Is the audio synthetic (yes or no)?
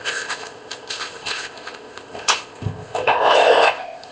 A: yes